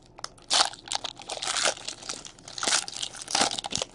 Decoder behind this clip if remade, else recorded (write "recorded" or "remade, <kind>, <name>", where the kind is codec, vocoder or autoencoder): recorded